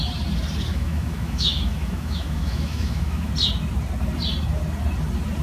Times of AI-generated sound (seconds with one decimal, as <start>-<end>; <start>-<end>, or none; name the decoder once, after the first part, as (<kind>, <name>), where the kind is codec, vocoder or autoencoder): 0.7-3.3 (autoencoder, DAC-VAE)